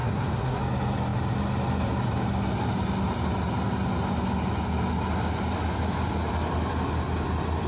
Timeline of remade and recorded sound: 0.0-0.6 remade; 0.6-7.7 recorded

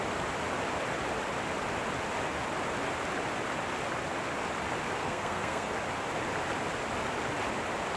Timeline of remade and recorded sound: 0.0-5.0 recorded; 5.0-5.7 remade; 5.7-8.0 recorded

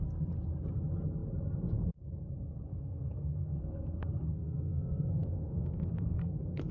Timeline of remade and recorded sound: 0.0-2.7 recorded; 2.7-6.7 remade

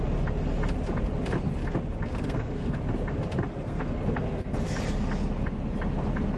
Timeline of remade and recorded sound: 0.0-2.1 recorded; 2.1-2.8 remade; 2.8-3.5 recorded; 3.5-4.6 remade; 4.6-6.4 recorded

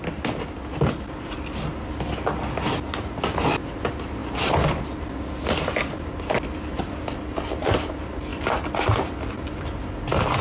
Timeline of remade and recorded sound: 0.0-10.4 recorded